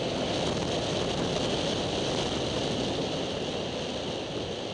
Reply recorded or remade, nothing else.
recorded